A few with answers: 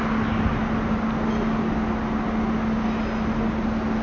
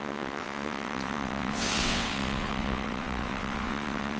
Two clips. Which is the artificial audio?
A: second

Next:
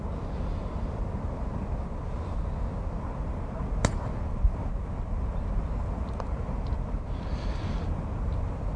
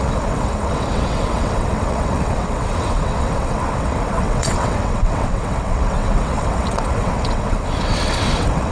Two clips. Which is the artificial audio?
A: second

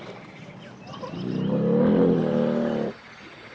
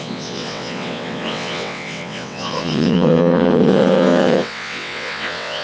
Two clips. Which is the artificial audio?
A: second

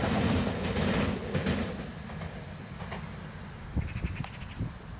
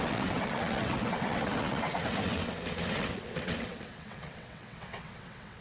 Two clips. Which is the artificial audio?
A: second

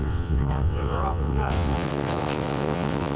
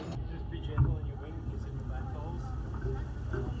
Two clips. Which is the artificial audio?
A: first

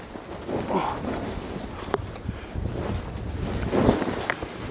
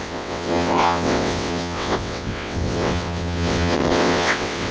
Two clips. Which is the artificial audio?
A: second